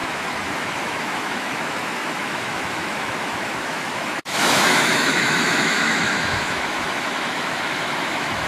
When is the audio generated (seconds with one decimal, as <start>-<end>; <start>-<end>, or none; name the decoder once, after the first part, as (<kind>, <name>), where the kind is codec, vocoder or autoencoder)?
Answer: 0.0-8.5 (autoencoder, DAC-VAE)